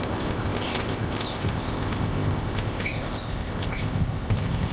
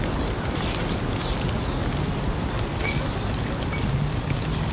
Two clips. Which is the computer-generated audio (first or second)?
first